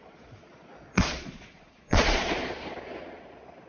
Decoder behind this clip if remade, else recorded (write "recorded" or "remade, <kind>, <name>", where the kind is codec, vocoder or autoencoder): remade, vocoder, Vocos